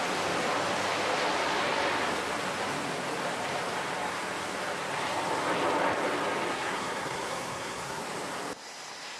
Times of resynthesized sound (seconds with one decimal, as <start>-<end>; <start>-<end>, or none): 6.5-8.0